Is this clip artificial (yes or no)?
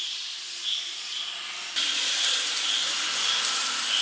no